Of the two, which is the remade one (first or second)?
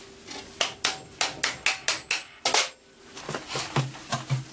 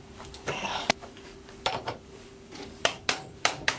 second